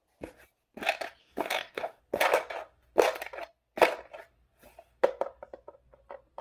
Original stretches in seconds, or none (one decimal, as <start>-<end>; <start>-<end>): 0.0-1.2; 2.0-6.4